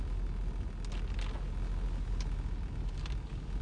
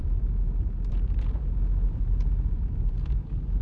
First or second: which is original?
first